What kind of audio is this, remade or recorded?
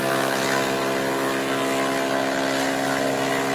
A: recorded